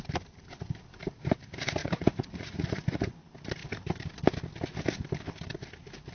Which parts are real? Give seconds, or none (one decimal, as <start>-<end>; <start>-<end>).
0.0-1.8; 3.1-6.1